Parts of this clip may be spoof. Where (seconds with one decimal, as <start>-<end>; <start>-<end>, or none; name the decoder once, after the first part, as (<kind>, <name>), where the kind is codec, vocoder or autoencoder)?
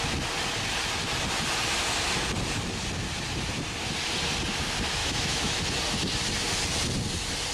5.0-5.6 (autoencoder, DAC-VAE)